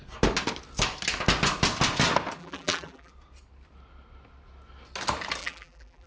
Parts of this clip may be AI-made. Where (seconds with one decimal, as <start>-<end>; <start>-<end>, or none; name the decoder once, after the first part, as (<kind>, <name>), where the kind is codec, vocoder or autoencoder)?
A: 2.4-3.1 (vocoder, BigVGAN v2); 5.4-6.1

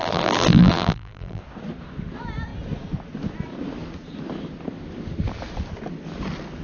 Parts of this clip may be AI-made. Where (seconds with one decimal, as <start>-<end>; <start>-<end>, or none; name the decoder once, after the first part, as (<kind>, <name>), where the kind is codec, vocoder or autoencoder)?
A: 0.0-1.4 (vocoder, BigVGAN v2)